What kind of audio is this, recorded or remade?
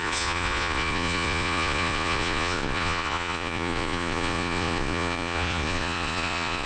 remade